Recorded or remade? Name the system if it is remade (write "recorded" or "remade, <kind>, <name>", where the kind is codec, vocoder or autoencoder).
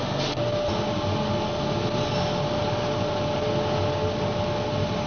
recorded